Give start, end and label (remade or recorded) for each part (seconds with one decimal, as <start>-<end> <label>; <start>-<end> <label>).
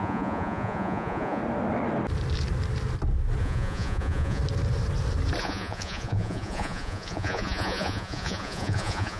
0.0-1.4 remade; 1.4-3.4 recorded; 3.4-4.4 remade; 4.4-5.4 recorded; 5.4-9.2 remade